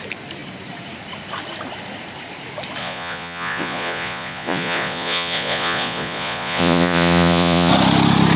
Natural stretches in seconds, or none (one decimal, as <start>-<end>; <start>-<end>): 0.0-2.8; 7.7-8.4

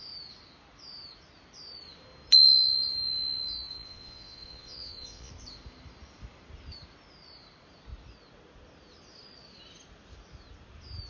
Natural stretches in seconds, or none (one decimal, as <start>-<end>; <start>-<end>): 0.0-3.7; 5.3-11.1

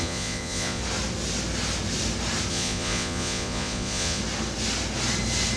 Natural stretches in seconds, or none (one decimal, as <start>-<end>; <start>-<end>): 0.8-2.5; 4.2-5.6

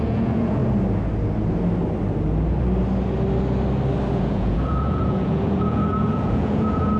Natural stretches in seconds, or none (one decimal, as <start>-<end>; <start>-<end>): 0.6-4.1

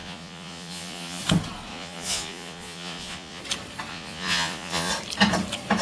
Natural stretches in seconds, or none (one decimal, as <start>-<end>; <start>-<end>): 1.2-1.7; 3.4-3.9; 4.9-5.8

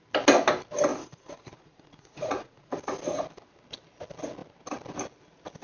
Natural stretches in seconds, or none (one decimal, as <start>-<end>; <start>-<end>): 0.0-0.9; 2.7-5.6

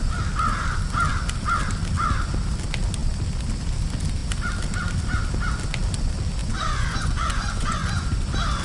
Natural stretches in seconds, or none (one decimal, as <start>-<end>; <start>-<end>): 0.0-6.4; 8.2-8.6

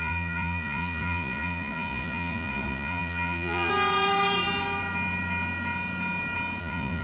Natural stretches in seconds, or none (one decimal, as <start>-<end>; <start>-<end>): 3.7-6.6